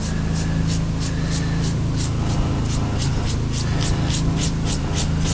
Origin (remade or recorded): recorded